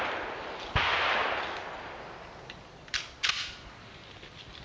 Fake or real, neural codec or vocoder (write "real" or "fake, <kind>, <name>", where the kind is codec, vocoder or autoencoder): real